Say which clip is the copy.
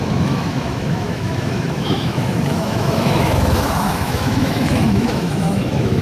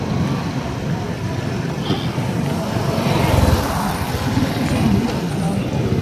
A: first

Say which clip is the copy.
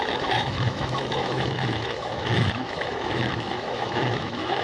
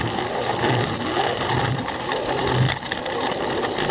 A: first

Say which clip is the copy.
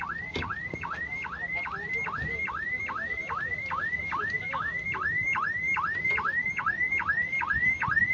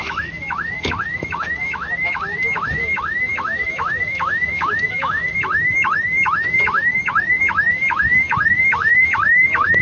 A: second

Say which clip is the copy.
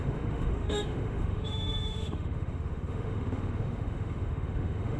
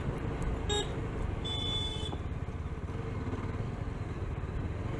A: first